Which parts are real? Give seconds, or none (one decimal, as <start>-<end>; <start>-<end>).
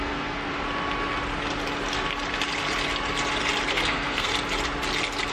0.5-3.7; 4.3-5.3